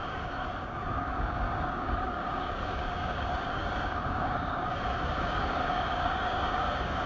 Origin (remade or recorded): remade